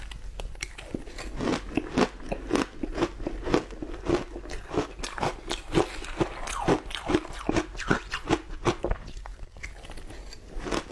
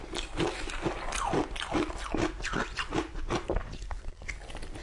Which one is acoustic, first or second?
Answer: first